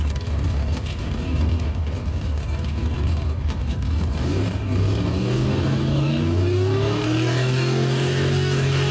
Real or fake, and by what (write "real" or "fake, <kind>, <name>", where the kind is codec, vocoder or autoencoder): fake, codec, DAC